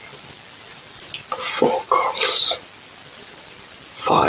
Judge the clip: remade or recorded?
recorded